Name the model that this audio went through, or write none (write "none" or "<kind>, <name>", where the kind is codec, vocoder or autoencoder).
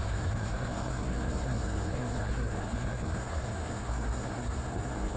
codec, SNAC